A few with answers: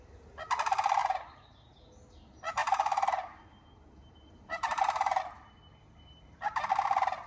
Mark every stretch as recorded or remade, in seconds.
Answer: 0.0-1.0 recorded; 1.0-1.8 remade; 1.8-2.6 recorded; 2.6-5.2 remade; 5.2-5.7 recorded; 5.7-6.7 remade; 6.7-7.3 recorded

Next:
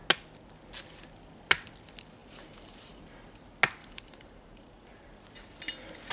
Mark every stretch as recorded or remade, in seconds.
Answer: 0.0-2.2 recorded; 2.2-3.0 remade; 3.0-3.8 recorded; 3.8-4.9 remade; 4.9-6.1 recorded